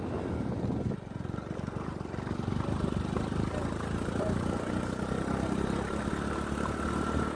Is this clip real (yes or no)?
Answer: yes